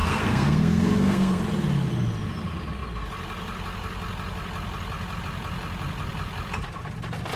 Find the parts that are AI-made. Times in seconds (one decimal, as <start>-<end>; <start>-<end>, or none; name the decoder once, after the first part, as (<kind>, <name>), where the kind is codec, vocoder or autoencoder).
0.0-1.4 (codec, SNAC)